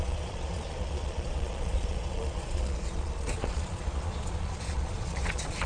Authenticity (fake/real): fake